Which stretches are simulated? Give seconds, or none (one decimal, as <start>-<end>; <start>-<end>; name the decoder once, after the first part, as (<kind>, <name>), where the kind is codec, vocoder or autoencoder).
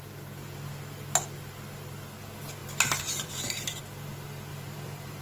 2.6-3.8 (vocoder, BigVGAN v2); 4.5-5.2